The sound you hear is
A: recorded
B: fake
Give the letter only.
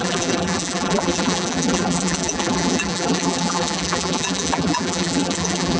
B